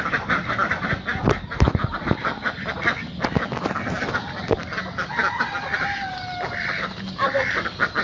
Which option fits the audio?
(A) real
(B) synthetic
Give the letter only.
A